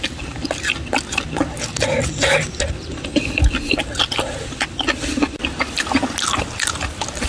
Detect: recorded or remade recorded